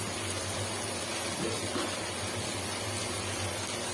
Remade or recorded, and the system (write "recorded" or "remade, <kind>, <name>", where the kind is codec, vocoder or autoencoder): recorded